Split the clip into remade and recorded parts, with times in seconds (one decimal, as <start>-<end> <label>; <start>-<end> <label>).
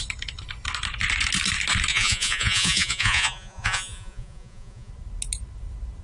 0.0-1.9 recorded; 1.9-4.9 remade; 4.9-6.0 recorded